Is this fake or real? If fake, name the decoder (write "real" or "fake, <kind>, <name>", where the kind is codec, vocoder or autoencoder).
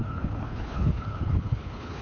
fake, codec, HILCodec